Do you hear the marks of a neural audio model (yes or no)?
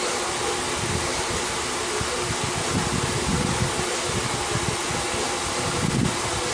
no